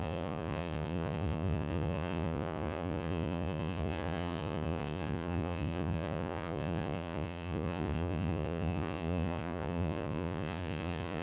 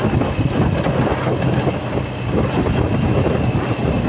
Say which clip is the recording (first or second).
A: second